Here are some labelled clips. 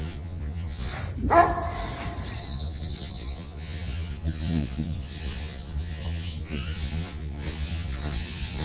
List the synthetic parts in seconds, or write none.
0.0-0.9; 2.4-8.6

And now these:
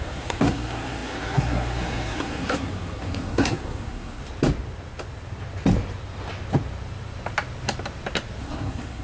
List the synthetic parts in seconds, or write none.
0.0-4.2; 8.4-9.0

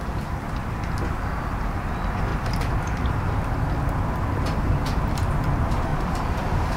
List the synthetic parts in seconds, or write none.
2.3-2.8; 5.9-6.8

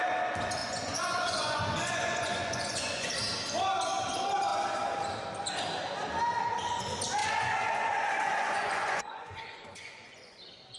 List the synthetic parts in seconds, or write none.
0.6-3.1; 7.2-10.4

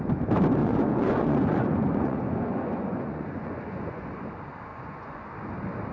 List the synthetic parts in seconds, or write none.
0.6-4.1; 4.7-5.3

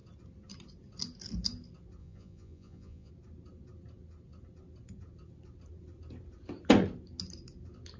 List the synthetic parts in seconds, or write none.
2.0-3.1

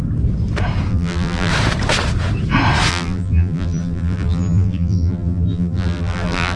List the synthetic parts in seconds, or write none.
0.9-1.5; 2.9-6.6

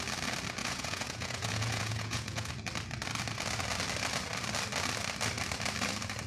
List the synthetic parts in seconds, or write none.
0.6-2.5